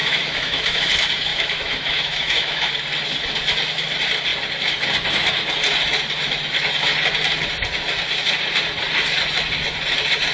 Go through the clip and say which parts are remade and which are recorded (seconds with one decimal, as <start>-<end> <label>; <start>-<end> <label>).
0.0-0.9 remade; 0.9-1.3 recorded; 1.3-2.7 remade; 2.7-10.3 recorded